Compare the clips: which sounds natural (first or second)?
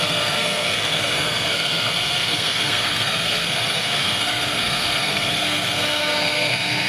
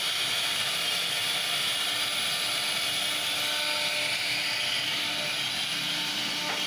second